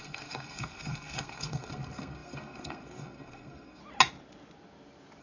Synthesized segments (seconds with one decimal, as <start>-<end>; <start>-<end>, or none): 0.0-3.8